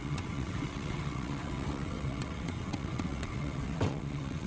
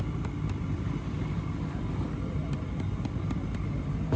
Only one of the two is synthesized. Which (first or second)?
first